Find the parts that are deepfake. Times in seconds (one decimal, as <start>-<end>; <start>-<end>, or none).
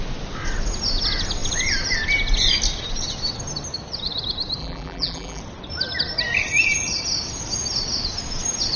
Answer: 4.6-5.4